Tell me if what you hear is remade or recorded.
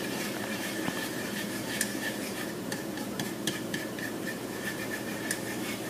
remade